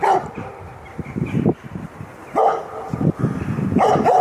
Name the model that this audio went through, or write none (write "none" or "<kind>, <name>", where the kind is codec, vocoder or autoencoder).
none